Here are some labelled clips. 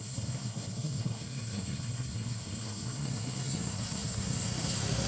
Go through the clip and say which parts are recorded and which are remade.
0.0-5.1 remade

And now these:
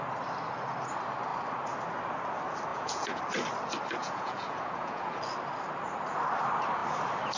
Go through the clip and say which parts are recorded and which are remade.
0.0-2.7 recorded; 2.7-3.2 remade; 3.2-4.0 recorded; 4.0-5.2 remade; 5.2-7.4 recorded

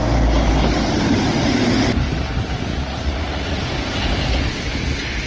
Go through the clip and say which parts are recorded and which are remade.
0.0-2.7 recorded; 2.7-3.6 remade; 3.6-5.3 recorded

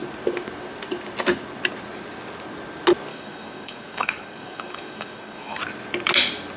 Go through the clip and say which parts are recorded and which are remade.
0.0-3.1 recorded; 3.1-5.6 remade; 5.6-6.6 recorded

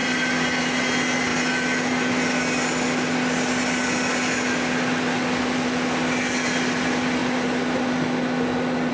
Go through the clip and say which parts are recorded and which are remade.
0.0-8.9 recorded

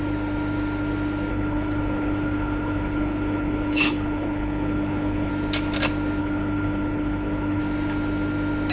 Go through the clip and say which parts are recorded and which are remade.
0.0-1.3 recorded; 1.3-5.3 remade; 5.3-6.2 recorded; 6.2-7.6 remade; 7.6-8.7 recorded